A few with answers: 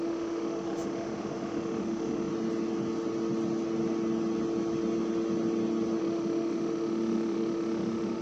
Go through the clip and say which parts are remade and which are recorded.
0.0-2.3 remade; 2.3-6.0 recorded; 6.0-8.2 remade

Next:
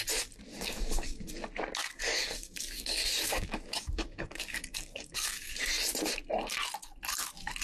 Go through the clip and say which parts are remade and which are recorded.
0.0-0.5 recorded; 0.5-1.3 remade; 1.3-1.8 recorded; 1.8-5.6 remade; 5.6-7.6 recorded

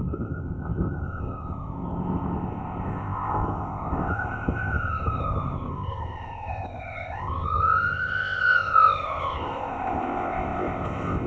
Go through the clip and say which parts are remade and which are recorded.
0.0-11.3 remade

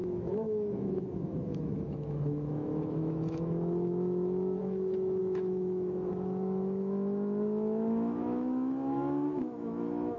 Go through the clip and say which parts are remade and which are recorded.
0.0-10.2 remade